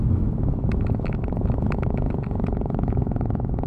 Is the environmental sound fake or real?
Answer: fake